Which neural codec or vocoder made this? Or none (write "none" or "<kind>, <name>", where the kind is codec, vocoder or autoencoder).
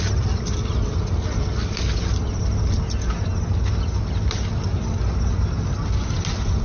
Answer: none